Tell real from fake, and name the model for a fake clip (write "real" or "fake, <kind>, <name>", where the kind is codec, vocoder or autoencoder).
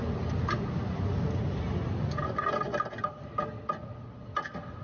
real